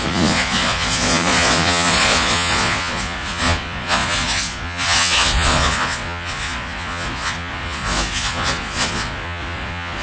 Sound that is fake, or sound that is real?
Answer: fake